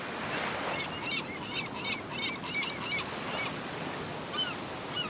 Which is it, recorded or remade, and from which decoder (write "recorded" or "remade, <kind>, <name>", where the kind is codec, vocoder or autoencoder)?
recorded